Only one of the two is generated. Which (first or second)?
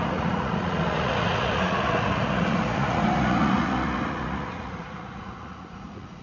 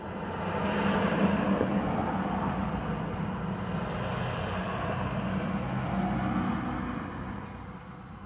first